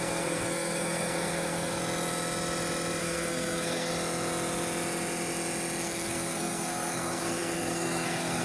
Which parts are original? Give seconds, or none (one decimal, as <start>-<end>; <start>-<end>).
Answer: 1.8-3.0; 3.9-5.8